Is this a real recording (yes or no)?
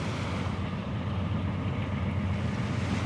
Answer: yes